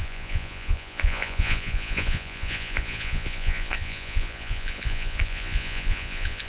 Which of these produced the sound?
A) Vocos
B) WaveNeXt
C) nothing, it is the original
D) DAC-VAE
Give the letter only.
A